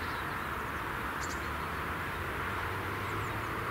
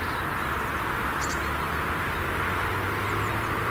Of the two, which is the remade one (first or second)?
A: first